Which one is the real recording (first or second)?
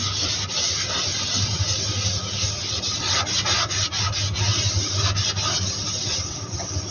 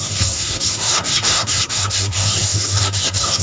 first